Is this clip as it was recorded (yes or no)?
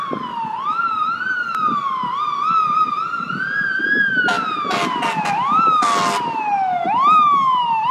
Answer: yes